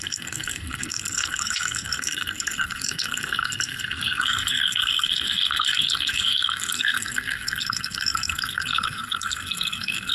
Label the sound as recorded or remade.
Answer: remade